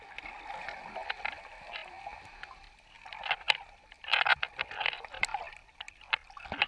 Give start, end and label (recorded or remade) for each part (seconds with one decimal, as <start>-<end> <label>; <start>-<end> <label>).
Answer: 0.0-6.7 recorded